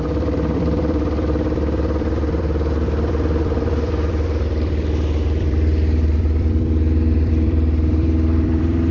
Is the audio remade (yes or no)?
yes